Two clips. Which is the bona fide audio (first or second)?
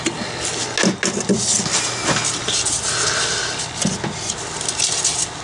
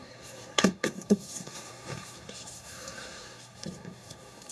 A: first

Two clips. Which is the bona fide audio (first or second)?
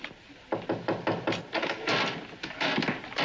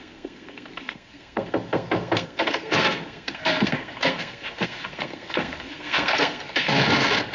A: first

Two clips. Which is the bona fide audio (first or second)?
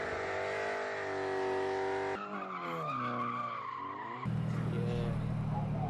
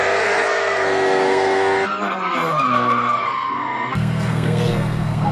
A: first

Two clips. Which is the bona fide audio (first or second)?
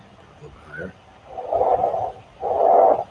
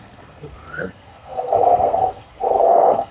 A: first